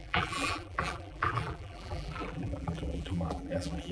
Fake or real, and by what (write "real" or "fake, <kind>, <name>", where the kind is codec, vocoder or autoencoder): fake, vocoder, BigVGAN v2